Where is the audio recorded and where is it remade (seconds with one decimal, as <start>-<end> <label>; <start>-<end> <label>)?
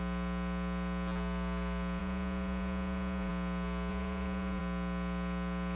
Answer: 0.0-2.0 recorded; 2.0-3.3 remade; 3.3-3.9 recorded; 3.9-4.6 remade; 4.6-5.8 recorded